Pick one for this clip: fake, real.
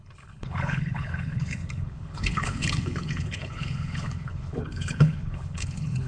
fake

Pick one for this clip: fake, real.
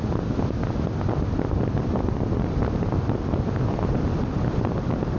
real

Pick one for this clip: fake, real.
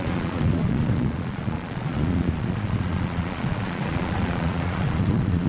fake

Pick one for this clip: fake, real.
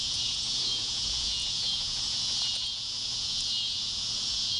fake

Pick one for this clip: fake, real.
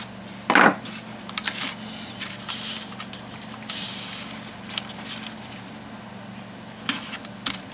real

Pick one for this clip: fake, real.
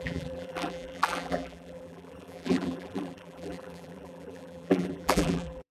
fake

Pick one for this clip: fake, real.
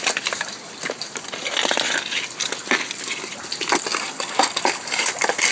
real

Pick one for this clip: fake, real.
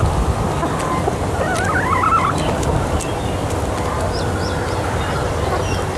real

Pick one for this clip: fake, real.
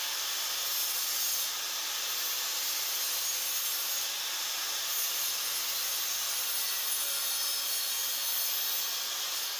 real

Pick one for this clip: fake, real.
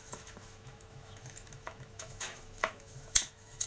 fake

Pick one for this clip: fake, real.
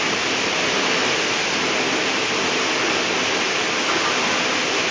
real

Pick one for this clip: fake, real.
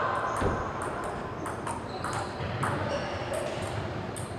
real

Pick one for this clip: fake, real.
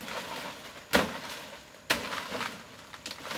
real